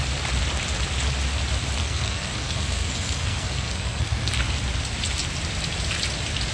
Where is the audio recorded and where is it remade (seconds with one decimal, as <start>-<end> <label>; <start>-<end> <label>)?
0.0-1.8 recorded; 1.8-4.3 remade; 4.3-6.5 recorded